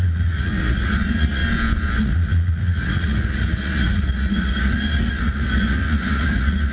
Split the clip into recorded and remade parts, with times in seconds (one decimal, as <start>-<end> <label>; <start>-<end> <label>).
0.0-1.4 remade; 1.4-2.0 recorded; 2.0-6.7 remade

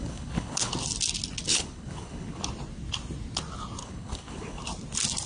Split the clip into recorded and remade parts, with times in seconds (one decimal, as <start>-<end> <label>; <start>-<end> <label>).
0.0-0.7 remade; 0.7-1.5 recorded; 1.5-2.4 remade; 2.4-3.8 recorded; 3.8-4.6 remade; 4.6-5.3 recorded